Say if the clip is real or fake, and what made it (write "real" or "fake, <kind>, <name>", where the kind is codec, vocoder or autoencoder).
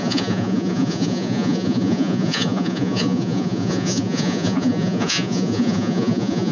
fake, vocoder, Vocos